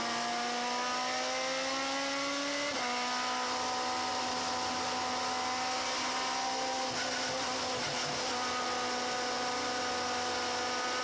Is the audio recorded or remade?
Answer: recorded